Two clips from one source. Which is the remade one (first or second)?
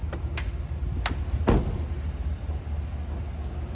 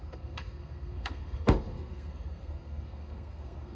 second